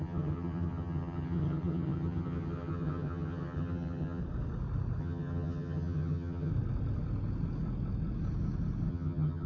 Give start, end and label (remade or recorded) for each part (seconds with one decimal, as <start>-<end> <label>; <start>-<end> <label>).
0.0-4.2 remade; 4.2-5.0 recorded; 5.0-6.5 remade; 6.5-8.9 recorded; 8.9-9.5 remade